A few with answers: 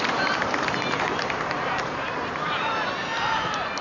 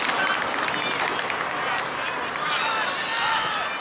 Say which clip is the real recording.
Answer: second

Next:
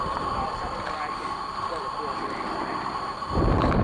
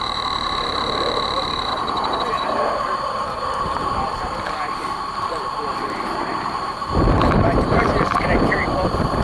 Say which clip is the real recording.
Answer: first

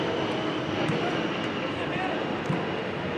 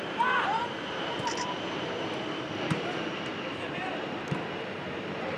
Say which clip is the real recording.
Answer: first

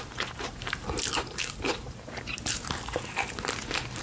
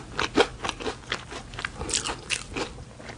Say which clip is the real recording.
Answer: second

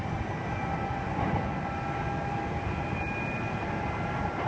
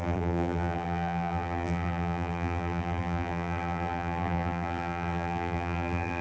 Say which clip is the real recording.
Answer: first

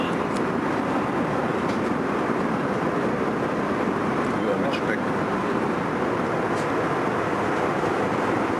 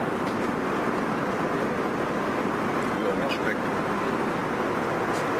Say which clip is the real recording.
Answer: second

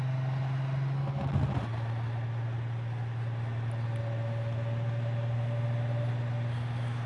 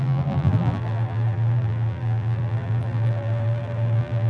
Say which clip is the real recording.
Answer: first